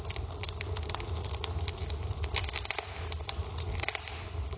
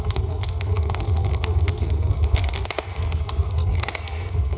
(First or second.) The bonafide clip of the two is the first